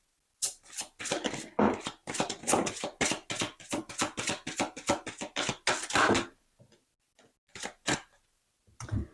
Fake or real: real